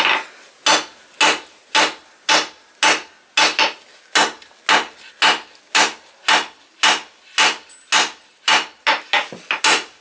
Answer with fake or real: real